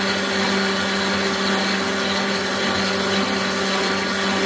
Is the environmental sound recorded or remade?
recorded